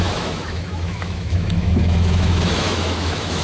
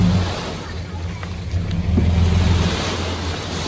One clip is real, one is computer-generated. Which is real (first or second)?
second